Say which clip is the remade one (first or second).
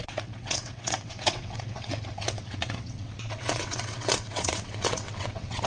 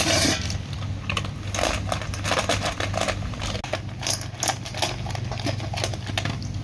first